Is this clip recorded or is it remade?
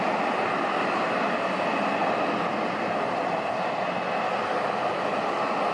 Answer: recorded